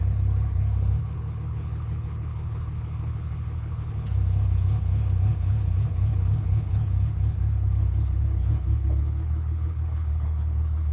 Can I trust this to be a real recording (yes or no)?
no